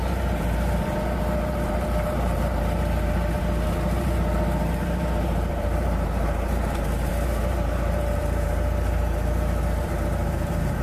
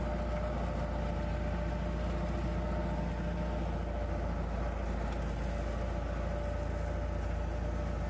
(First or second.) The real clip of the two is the second